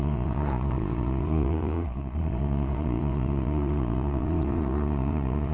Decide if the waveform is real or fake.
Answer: fake